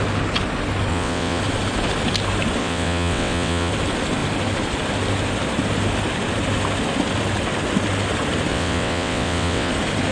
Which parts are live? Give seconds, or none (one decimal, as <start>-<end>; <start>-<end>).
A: 0.0-0.9; 1.4-2.6; 3.7-8.5; 9.7-10.1